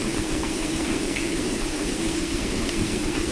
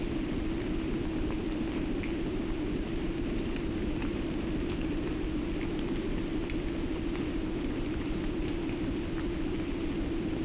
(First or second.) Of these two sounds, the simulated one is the first